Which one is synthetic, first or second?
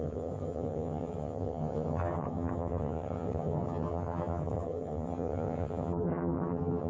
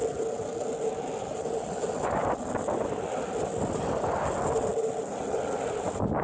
first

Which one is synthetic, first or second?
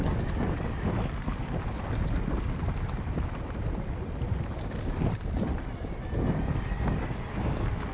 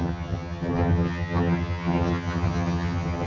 second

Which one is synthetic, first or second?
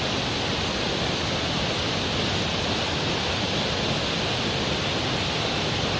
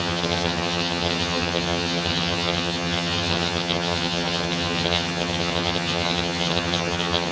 second